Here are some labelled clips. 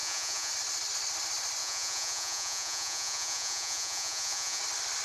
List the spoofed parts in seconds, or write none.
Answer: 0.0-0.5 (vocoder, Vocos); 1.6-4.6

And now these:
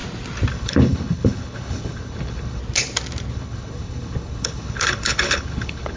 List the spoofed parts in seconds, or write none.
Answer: 0.5-2.6 (codec, HILCodec); 3.3-6.0

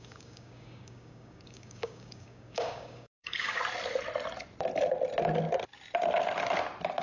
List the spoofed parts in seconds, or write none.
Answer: 0.0-3.6 (codec, DAC)

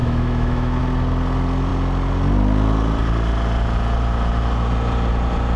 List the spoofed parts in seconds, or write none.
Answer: 0.0-0.8 (autoencoder, DAC-VAE)

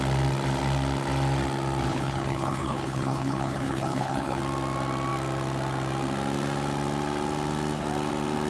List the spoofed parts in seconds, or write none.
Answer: 1.9-4.4 (codec, HILCodec)

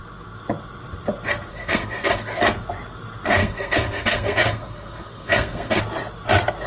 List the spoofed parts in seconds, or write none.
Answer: 1.5-2.4 (codec, SNAC); 3.4-5.8